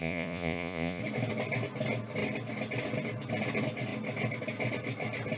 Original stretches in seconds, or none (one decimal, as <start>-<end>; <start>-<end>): 1.0-5.4